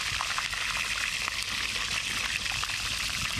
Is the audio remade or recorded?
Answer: recorded